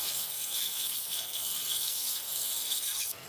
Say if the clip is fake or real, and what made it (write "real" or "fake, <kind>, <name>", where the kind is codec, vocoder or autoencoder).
fake, codec, SNAC